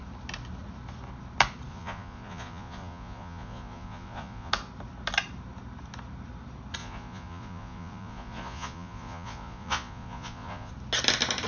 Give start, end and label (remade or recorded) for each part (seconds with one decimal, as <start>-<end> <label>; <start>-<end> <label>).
0.0-1.7 recorded; 1.7-4.5 remade; 4.5-6.8 recorded; 6.8-10.7 remade; 10.7-11.5 recorded